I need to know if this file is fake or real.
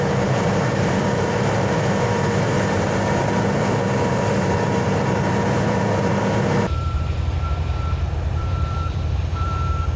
fake